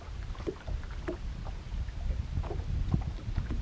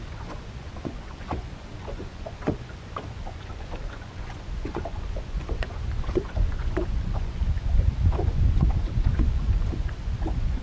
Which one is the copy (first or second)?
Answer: second